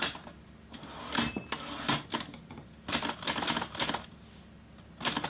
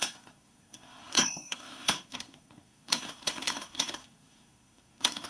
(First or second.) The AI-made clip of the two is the second